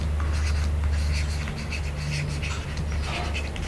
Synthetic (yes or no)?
no